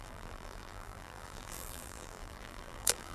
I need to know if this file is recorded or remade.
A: remade